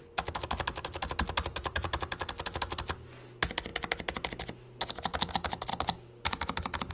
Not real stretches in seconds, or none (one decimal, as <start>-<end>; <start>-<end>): 1.5-2.0; 5.7-6.9